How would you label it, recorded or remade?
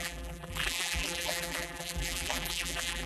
remade